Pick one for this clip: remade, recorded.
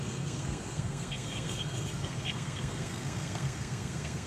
remade